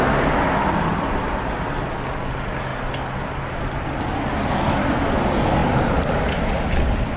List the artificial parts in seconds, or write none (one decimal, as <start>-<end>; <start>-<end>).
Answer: none